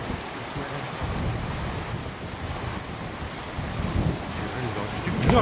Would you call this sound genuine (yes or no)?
yes